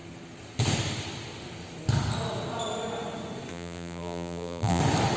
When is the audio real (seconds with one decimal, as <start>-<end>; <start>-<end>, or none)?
0.0-3.5; 4.8-5.2